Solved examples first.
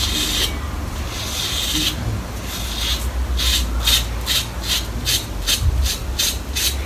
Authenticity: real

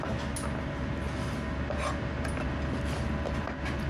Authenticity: real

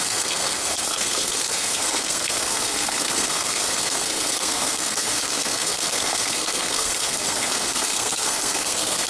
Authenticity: fake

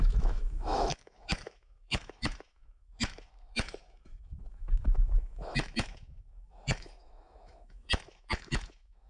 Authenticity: fake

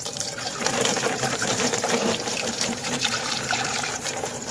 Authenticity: fake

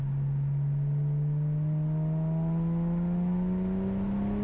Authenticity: real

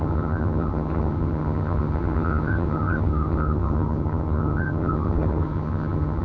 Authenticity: fake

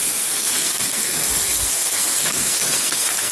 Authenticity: fake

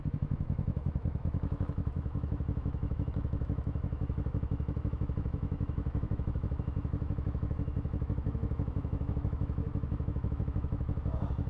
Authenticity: fake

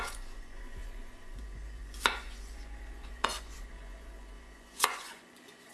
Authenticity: fake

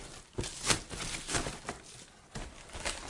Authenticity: real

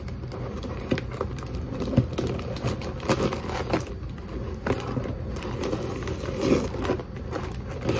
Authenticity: real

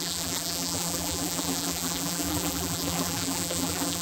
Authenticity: fake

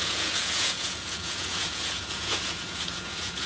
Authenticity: fake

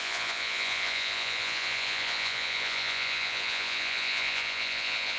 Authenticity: fake